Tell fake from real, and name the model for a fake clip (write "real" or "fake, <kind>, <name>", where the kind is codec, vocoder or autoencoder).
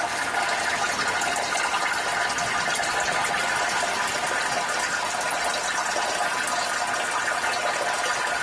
real